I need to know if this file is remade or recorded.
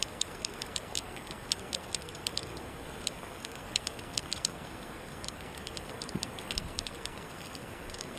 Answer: remade